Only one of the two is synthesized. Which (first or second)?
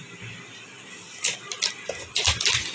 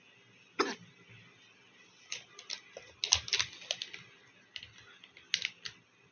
first